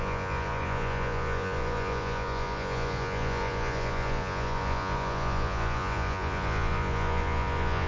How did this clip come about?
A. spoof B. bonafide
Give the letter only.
A